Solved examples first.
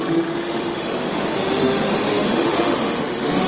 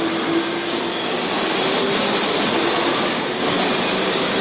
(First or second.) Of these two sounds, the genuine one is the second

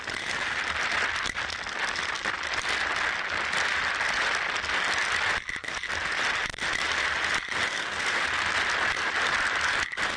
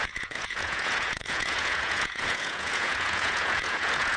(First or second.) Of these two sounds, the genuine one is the first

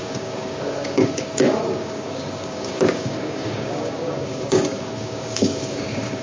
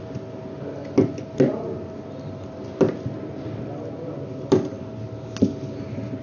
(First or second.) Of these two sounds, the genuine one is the second